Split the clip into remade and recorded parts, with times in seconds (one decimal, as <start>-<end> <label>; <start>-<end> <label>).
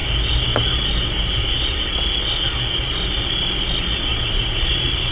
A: 0.0-4.1 recorded; 4.1-5.1 remade